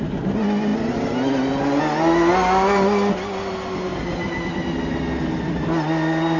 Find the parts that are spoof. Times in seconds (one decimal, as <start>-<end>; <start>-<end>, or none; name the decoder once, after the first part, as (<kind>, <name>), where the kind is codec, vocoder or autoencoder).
none